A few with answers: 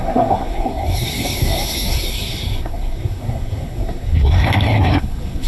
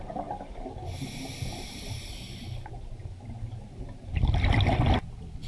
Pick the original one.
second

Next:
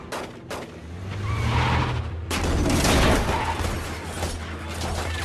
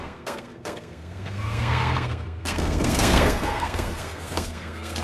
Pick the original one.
first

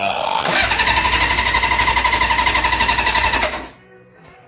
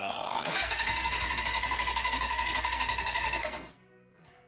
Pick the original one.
first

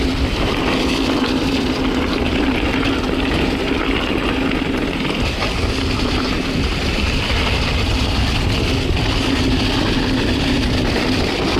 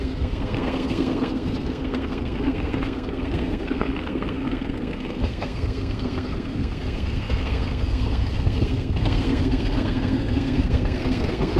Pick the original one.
first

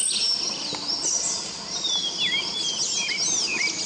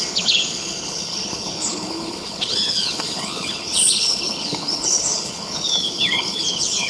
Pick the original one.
first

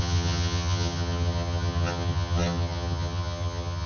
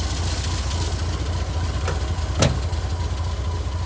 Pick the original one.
second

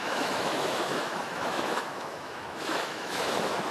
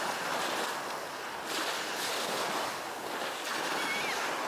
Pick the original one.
second